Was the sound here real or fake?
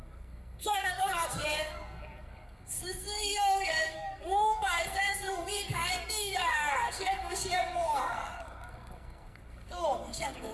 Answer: fake